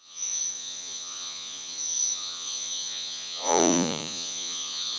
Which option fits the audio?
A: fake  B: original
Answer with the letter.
A